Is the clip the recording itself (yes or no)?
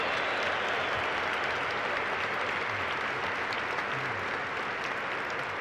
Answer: yes